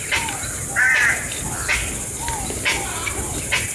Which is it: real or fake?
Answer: real